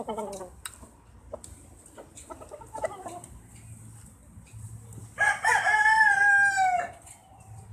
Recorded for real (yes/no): yes